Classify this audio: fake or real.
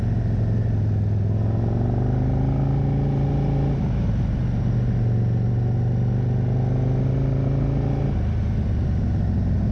real